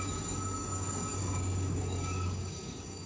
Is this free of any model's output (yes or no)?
no